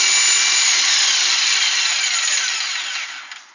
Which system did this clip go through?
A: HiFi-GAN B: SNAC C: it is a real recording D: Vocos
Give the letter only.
C